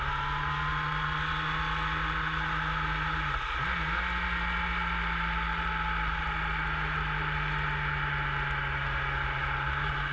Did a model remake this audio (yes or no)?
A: no